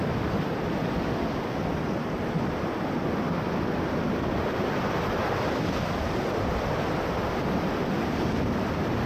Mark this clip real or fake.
fake